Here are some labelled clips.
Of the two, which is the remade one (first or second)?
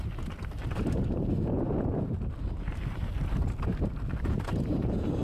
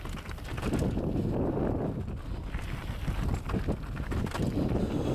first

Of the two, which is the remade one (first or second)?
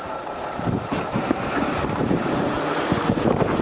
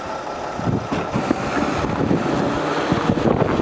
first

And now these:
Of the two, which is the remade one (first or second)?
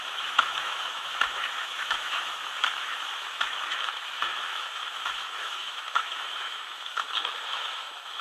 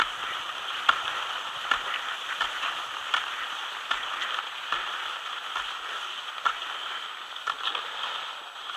first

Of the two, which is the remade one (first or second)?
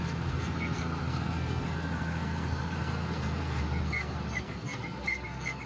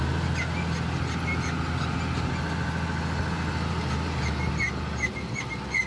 first